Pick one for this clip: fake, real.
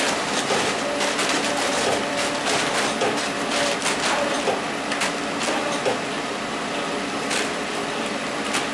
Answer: fake